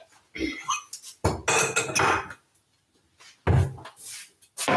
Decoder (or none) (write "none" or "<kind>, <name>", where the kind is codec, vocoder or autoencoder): none